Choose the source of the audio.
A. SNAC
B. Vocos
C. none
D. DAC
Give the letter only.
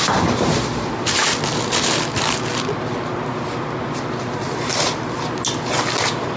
C